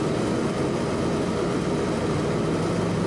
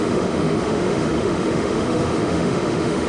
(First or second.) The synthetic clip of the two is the second